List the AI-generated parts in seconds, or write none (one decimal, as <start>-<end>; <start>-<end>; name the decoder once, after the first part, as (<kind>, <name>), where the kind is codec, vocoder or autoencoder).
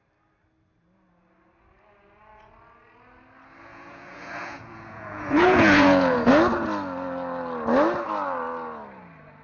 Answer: 3.7-6.3 (vocoder, Vocos)